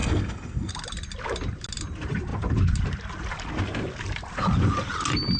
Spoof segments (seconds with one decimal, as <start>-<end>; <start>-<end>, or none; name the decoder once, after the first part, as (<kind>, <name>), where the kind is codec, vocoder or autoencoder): 0.0-0.7 (codec, SNAC)